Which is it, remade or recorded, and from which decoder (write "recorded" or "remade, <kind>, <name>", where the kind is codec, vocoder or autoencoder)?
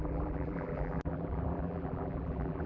remade, vocoder, BigVGAN v2